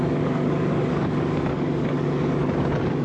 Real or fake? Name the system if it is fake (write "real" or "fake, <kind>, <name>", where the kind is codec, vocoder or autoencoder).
fake, codec, DAC